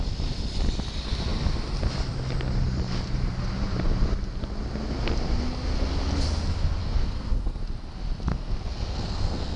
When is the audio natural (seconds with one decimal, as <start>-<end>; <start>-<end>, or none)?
0.0-6.8; 7.6-8.3